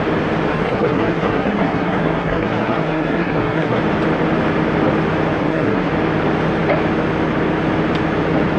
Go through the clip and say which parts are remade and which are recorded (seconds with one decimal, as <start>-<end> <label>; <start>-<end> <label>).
0.0-0.5 recorded; 0.5-3.8 remade; 3.8-5.4 recorded; 5.4-5.9 remade; 5.9-8.6 recorded